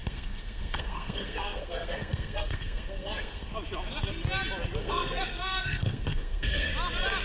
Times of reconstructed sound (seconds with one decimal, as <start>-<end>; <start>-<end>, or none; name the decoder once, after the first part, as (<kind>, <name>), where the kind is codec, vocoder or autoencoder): 0.0-3.5 (codec, SNAC); 4.8-6.7